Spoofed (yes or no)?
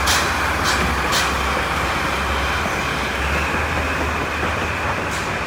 no